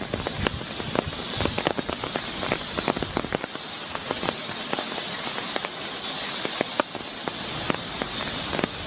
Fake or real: real